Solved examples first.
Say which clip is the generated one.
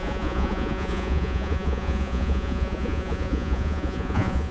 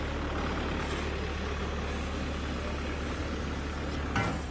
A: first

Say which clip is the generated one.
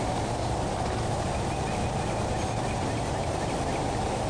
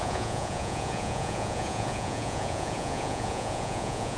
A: second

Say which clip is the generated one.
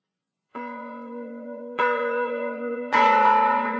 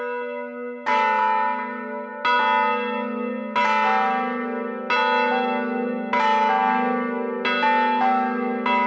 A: first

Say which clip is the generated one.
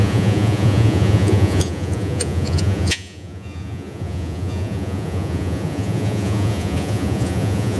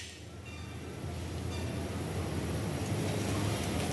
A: first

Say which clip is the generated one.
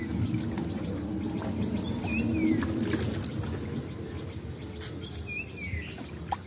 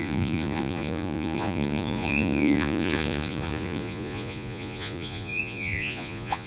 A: second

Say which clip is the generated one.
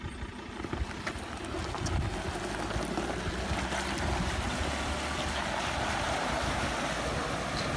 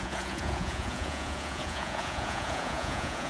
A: second